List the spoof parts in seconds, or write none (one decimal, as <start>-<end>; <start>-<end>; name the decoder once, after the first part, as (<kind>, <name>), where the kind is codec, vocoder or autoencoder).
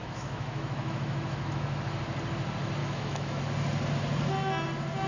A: 0.0-1.8 (autoencoder, DAC-VAE); 2.8-3.4